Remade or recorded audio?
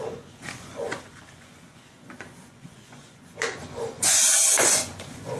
remade